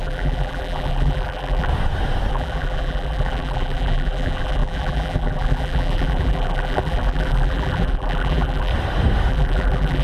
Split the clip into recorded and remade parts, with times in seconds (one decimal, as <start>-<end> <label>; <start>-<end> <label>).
0.0-1.7 remade; 1.7-2.3 recorded; 2.3-8.7 remade; 8.7-9.3 recorded; 9.3-10.0 remade